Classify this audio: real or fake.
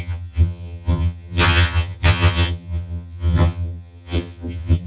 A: fake